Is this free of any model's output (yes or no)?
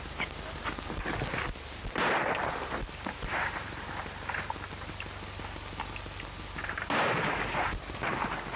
yes